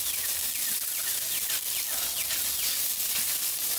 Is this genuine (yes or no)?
yes